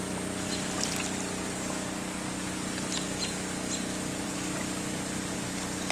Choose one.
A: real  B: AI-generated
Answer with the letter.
A